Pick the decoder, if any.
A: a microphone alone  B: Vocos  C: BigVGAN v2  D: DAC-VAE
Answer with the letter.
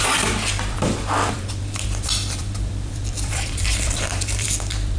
C